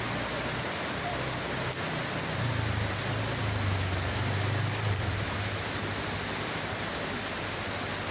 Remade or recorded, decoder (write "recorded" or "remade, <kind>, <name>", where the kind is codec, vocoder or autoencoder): recorded